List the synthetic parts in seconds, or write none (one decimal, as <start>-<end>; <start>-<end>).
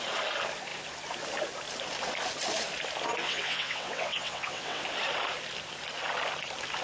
3.2-4.8